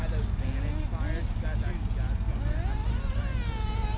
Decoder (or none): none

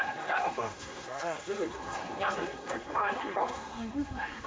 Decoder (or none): codec, SNAC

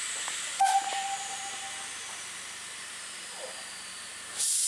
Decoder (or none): none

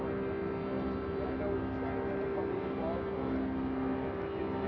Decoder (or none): none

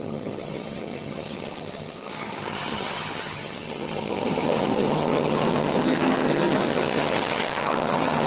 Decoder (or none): vocoder, HiFi-GAN